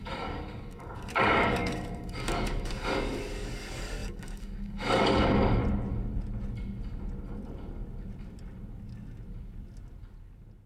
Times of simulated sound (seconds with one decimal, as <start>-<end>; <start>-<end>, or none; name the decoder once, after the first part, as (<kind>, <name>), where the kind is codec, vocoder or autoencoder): 0.0-5.6 (codec, DAC)